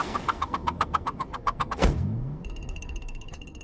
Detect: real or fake fake